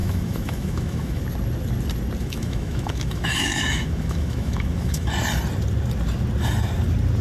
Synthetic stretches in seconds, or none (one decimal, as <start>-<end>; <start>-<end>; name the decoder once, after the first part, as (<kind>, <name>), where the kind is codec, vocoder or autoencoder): 0.0-1.2 (autoencoder, DAC-VAE); 2.2-5.1